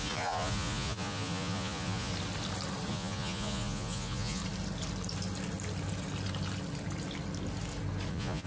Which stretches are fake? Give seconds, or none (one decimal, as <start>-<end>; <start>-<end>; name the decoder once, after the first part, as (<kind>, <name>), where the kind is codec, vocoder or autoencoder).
0.0-2.1 (vocoder, Vocos); 2.9-4.4; 8.1-8.5